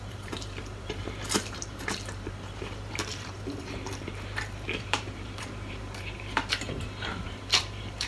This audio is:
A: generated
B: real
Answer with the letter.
A